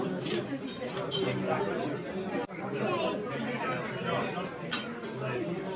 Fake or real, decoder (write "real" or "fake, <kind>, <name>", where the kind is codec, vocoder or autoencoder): real